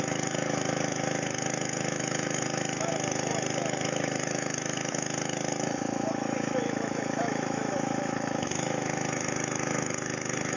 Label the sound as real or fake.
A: fake